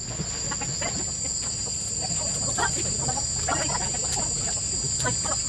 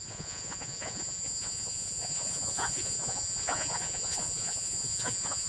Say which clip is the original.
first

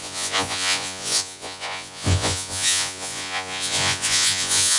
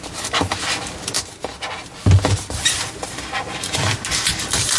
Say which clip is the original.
second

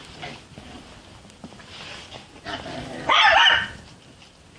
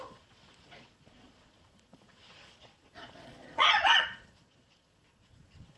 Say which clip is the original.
first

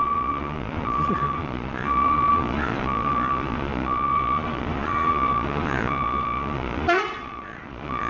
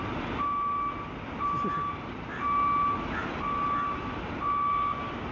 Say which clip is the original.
second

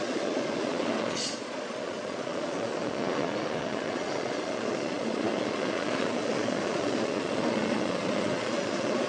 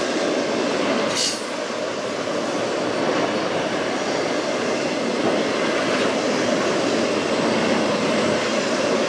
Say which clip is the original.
second